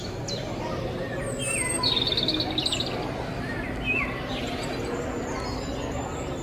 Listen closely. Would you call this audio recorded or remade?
recorded